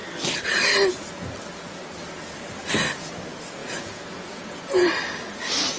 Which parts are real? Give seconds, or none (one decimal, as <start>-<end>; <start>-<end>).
0.0-3.6; 4.9-5.8